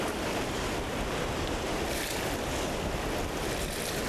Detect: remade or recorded recorded